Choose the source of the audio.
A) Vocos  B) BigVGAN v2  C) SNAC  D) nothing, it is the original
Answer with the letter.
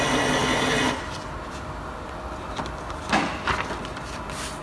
D